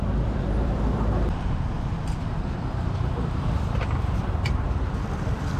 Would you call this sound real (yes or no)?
no